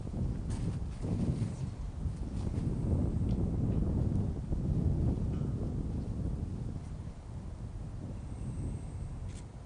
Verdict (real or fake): real